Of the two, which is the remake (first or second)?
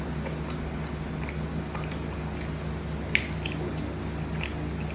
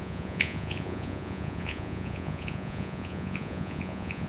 second